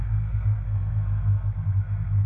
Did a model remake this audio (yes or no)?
yes